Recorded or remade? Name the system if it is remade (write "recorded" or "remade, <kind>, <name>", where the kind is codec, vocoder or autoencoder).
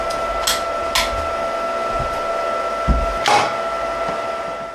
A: recorded